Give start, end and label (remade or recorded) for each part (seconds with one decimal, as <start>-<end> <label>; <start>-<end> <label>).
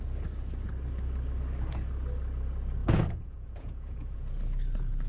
0.0-2.8 recorded; 2.8-4.3 remade; 4.3-5.1 recorded